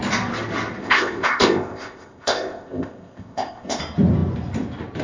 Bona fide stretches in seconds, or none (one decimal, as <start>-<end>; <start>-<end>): 0.0-0.8; 3.8-5.0